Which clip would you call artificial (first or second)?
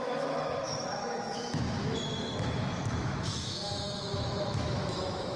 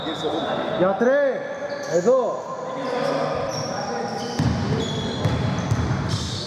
first